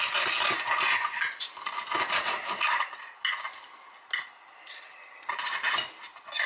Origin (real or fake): real